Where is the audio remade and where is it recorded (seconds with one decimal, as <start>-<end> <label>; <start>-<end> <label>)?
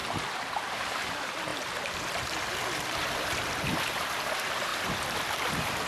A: 0.0-5.9 recorded